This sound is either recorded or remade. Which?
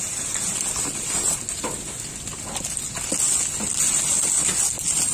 recorded